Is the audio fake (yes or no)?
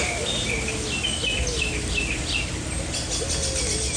no